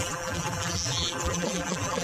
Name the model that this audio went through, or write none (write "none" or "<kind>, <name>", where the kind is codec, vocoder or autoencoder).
vocoder, BigVGAN v2